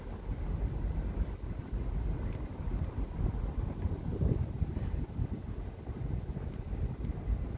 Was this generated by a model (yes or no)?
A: no